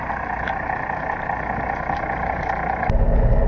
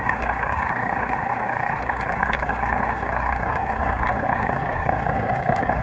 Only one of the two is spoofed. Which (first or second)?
second